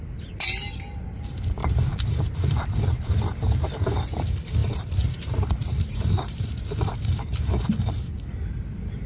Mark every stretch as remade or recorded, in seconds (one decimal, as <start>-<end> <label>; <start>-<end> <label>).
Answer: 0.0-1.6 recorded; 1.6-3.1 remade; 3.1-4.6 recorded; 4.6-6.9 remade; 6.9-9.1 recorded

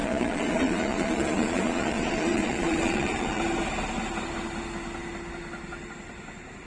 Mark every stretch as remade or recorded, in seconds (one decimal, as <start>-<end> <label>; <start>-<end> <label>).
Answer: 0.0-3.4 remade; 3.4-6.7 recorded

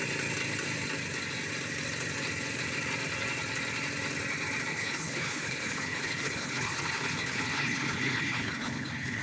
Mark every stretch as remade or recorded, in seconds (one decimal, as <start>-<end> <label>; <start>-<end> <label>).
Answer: 0.0-4.7 recorded; 4.7-9.2 remade

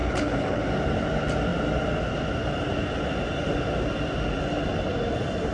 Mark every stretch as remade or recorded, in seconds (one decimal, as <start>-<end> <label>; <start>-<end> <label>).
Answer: 0.0-0.6 remade; 0.6-5.5 recorded

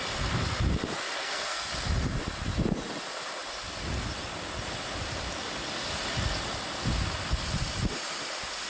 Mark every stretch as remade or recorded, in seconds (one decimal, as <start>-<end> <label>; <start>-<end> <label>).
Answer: 0.0-1.2 recorded; 1.2-1.7 remade; 1.7-8.7 recorded